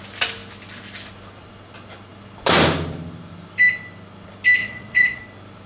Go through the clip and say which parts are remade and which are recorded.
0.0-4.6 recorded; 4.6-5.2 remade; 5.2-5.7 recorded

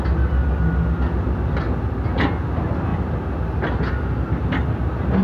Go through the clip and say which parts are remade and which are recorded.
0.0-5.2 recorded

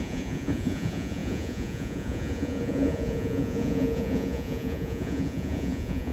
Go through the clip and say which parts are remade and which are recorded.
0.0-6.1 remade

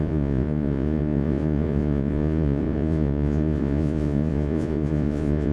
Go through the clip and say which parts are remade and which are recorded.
0.0-5.5 remade

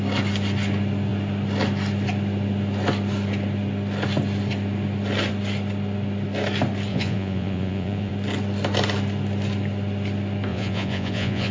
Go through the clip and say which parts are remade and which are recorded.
0.0-6.9 recorded; 6.9-8.1 remade; 8.1-10.5 recorded; 10.5-11.5 remade

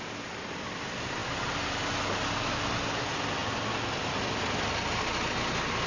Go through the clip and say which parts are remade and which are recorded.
0.0-5.9 recorded